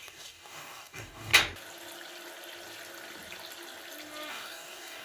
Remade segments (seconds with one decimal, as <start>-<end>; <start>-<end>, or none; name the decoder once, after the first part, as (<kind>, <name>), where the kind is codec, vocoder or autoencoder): 0.0-1.3 (codec, DAC); 4.3-5.0